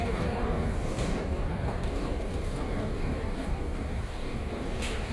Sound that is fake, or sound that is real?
fake